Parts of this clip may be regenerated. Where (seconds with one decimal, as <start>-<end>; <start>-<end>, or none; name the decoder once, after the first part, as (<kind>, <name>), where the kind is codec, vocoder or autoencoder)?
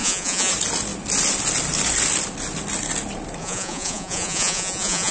0.0-0.5 (vocoder, Vocos); 3.4-5.1